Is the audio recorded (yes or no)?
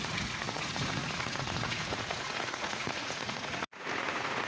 no